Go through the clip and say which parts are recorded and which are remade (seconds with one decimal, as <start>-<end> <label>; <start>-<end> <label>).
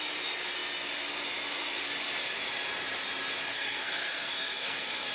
0.0-3.5 recorded; 3.5-5.1 remade